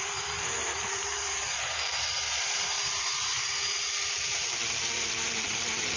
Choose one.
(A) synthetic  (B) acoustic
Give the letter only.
A